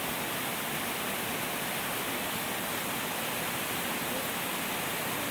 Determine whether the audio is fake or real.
real